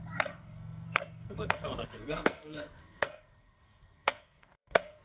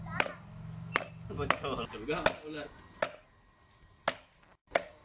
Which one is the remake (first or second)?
first